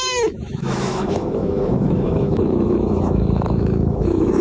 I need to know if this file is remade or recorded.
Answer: remade